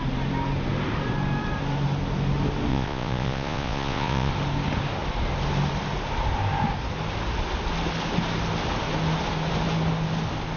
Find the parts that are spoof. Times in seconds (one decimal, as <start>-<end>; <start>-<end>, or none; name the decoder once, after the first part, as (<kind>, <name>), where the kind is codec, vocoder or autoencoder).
2.7-4.3 (vocoder, Vocos)